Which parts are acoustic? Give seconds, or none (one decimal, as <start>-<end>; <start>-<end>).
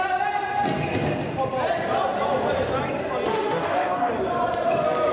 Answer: 0.0-3.3; 4.1-5.1